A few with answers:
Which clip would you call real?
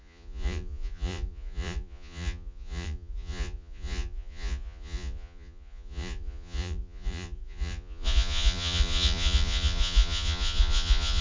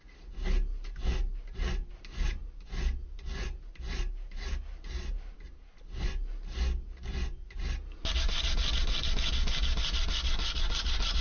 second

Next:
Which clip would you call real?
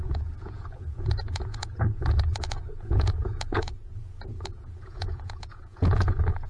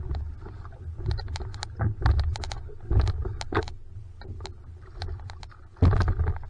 second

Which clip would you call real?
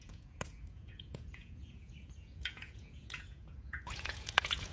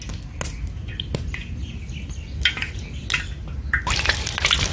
second